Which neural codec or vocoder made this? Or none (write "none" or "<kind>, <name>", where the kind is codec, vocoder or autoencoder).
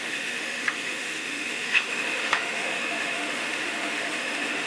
autoencoder, DAC-VAE